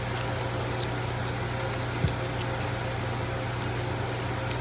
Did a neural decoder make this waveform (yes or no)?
no